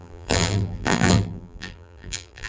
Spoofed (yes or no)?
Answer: yes